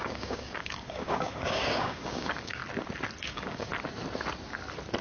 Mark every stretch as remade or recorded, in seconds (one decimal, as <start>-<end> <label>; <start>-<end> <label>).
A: 0.0-2.6 remade; 2.6-3.2 recorded; 3.2-3.7 remade; 3.7-5.0 recorded